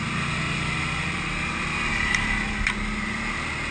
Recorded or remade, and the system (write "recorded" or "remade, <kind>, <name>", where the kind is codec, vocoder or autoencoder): recorded